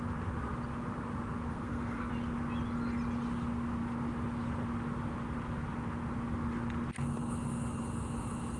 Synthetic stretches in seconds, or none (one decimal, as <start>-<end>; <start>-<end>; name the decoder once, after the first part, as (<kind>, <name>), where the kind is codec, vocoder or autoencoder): 1.5-2.1 (codec, SNAC)